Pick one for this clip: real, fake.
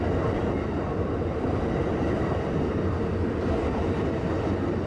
real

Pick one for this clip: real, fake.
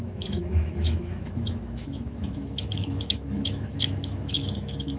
fake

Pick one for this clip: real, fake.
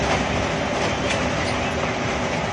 real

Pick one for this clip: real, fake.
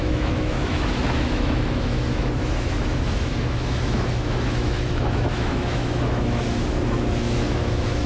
fake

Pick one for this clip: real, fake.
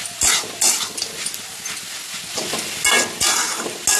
real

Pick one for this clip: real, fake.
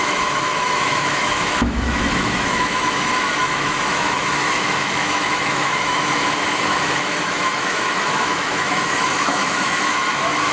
fake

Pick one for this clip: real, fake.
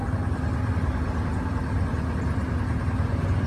real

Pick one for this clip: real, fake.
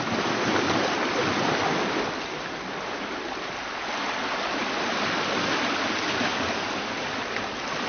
real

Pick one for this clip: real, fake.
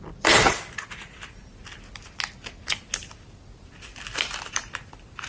real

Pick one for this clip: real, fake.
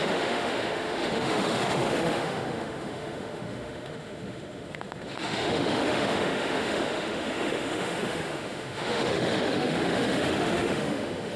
fake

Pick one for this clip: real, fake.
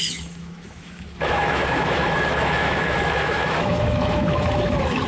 fake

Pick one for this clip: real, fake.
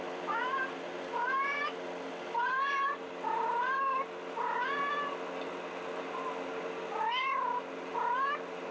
real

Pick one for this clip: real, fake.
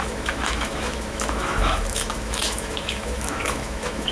fake